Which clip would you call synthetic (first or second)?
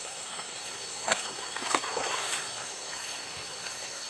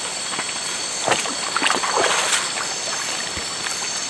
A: first